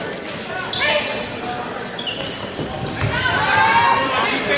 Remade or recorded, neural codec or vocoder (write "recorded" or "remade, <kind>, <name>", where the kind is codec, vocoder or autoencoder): recorded